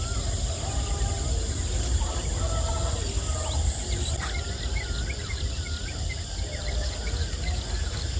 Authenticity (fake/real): real